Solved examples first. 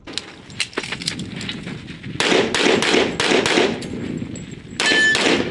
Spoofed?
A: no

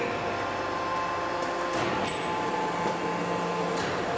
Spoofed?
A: no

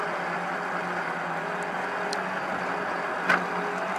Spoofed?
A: no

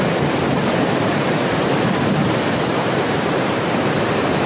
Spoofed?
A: yes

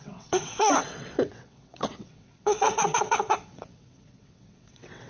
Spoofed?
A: yes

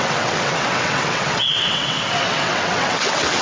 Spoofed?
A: yes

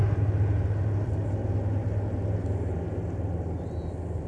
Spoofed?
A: no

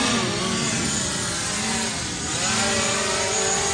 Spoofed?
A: no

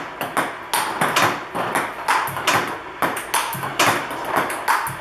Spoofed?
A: no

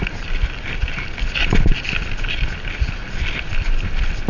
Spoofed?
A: no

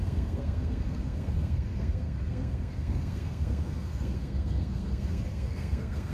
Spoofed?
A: yes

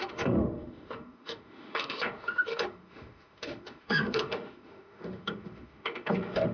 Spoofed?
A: yes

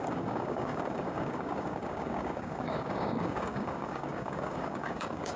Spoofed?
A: yes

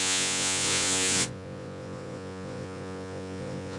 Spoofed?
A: yes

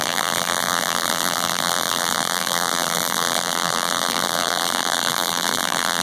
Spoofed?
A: yes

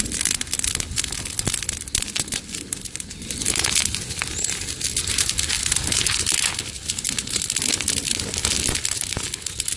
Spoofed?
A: no